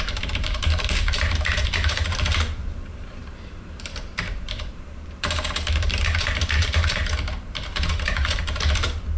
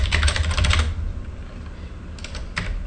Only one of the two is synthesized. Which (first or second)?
first